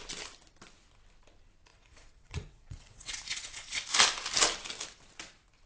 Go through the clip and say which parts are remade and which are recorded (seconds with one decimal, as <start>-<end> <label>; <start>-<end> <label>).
0.0-1.7 recorded; 1.7-3.8 remade; 3.8-5.7 recorded